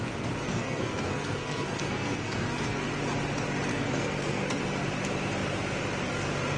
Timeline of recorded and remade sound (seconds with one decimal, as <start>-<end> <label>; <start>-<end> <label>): 0.0-0.5 recorded; 0.5-2.9 remade; 2.9-3.7 recorded; 3.7-4.6 remade; 4.6-6.6 recorded